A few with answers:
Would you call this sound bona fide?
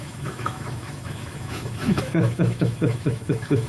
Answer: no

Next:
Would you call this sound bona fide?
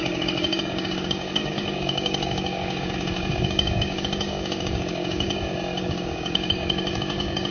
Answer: no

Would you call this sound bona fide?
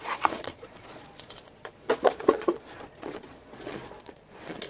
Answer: no